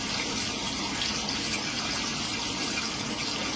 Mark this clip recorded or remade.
recorded